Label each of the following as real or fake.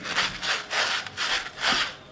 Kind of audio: real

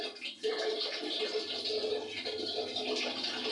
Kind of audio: real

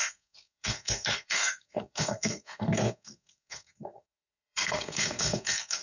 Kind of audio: fake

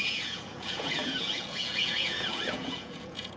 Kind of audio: fake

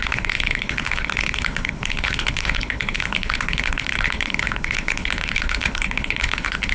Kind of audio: fake